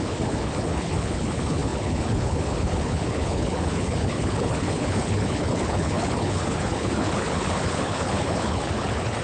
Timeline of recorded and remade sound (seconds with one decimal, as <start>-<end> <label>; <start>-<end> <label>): 0.0-9.2 remade